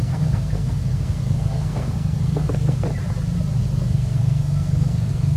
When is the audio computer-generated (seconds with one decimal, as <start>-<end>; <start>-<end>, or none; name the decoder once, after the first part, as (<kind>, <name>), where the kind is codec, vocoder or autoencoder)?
0.0-2.9 (codec, SNAC); 3.6-5.4